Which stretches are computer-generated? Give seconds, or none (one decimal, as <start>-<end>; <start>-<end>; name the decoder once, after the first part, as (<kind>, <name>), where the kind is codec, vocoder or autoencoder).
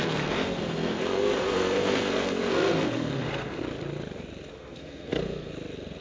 0.0-3.6 (codec, SNAC); 4.5-5.5